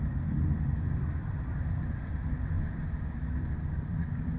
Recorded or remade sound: recorded